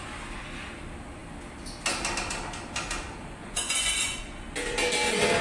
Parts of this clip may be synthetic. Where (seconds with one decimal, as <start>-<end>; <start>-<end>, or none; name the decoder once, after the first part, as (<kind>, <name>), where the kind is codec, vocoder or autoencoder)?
3.4-4.2 (vocoder, Vocos)

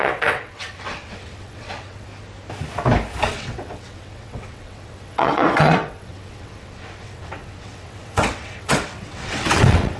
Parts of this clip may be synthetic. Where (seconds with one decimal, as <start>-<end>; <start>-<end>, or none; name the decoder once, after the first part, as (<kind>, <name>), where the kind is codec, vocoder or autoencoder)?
0.0-2.1 (vocoder, WaveNeXt); 3.3-10.0

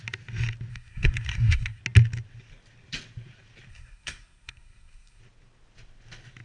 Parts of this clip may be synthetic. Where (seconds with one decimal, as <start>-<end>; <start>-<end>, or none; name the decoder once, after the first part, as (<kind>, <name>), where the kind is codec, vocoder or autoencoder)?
0.7-1.8 (codec, SNAC); 3.7-5.2

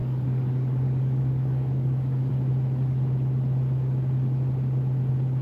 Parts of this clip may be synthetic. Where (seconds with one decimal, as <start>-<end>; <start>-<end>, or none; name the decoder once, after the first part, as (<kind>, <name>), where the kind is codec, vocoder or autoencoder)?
0.0-2.3 (codec, DAC)

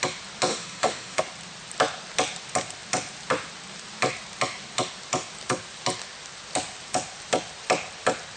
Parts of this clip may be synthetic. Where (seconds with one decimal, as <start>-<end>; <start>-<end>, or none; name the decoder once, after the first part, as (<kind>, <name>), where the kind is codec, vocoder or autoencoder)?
0.5-1.2 (autoencoder, DAC-VAE)

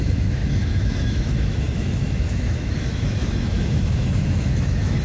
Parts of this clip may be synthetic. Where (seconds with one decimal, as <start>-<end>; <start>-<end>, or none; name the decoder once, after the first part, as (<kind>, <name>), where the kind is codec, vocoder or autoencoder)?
0.0-5.0 (autoencoder, DAC-VAE)

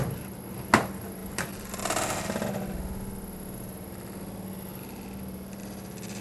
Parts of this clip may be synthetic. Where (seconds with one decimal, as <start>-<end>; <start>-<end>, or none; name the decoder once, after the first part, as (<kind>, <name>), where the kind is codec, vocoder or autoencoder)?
1.2-1.8 (vocoder, BigVGAN v2); 4.7-5.6